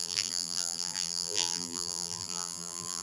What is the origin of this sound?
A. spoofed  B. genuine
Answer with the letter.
A